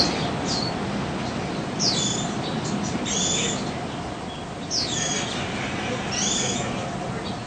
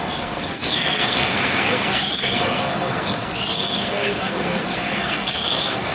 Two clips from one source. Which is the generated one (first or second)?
second